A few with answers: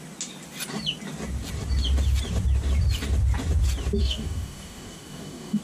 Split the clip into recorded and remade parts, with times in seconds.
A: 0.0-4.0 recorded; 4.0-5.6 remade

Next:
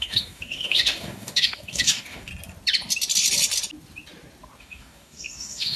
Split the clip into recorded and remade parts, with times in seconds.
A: 0.0-2.3 remade; 2.3-4.6 recorded; 4.6-5.8 remade

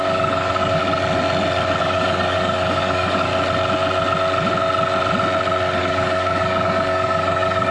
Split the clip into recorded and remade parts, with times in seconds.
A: 0.0-0.8 remade; 0.8-1.8 recorded; 1.8-3.3 remade; 3.3-5.8 recorded; 5.8-7.7 remade

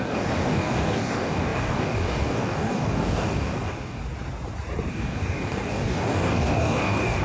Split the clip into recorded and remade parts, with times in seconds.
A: 0.0-4.0 remade; 4.0-4.9 recorded; 4.9-7.2 remade

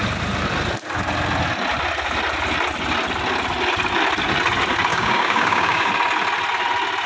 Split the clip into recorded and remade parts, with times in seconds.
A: 0.0-4.9 recorded; 4.9-5.9 remade; 5.9-7.1 recorded

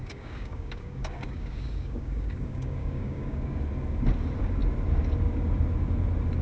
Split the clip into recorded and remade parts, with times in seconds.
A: 0.0-3.6 remade; 3.6-6.4 recorded

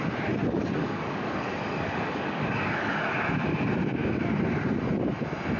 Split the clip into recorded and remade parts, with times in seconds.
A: 0.0-0.6 recorded; 0.6-2.9 remade; 2.9-5.6 recorded